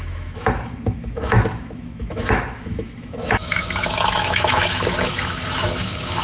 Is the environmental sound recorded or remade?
remade